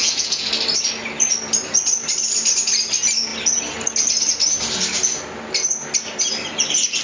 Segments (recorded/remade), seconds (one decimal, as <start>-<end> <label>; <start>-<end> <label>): 0.0-0.5 remade; 0.5-7.0 recorded